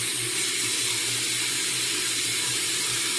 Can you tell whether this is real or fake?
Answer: real